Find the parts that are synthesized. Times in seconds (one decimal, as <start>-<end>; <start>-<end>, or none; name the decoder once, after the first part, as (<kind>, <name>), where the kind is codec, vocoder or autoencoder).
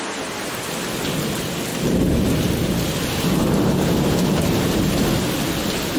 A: 1.7-5.3 (vocoder, BigVGAN v2)